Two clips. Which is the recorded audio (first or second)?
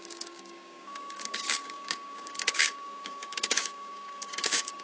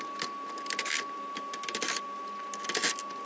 second